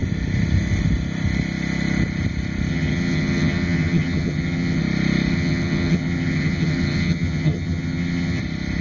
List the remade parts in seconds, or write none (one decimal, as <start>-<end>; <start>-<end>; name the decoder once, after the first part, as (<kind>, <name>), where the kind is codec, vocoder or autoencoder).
2.7-4.8 (vocoder, HiFi-GAN); 5.3-8.4